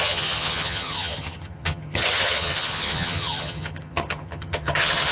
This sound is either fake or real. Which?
fake